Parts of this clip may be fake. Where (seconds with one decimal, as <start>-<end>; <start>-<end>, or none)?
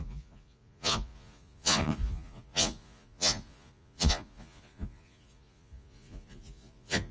0.0-7.1